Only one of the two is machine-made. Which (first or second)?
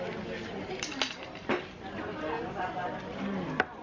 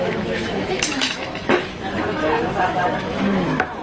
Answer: second